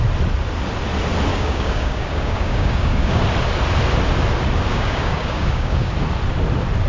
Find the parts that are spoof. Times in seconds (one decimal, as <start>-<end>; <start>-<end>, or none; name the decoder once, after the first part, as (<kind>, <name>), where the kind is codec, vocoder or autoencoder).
1.3-3.2 (codec, DAC); 4.7-5.9